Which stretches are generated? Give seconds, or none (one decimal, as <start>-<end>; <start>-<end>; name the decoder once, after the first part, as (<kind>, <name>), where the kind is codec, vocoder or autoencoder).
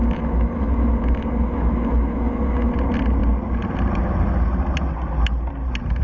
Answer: 0.0-2.7 (autoencoder, DAC-VAE)